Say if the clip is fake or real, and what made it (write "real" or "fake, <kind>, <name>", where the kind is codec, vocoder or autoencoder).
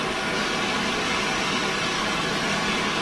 real